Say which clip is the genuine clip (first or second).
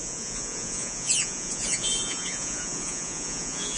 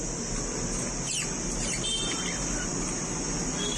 second